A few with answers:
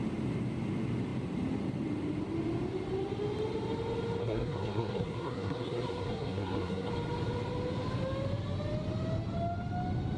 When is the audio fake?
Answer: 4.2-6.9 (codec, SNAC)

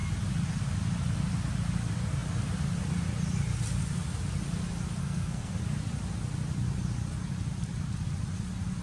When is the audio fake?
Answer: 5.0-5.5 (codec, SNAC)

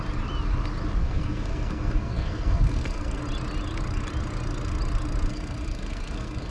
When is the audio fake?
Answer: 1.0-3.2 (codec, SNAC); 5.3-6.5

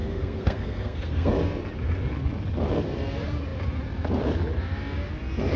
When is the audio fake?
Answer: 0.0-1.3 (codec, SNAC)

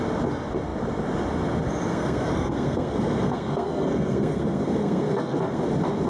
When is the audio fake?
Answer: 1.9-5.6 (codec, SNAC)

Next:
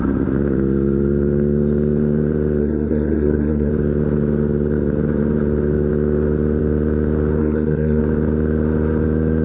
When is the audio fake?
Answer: 2.6-3.7 (codec, SNAC); 7.4-8.0

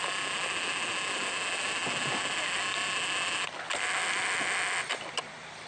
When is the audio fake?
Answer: none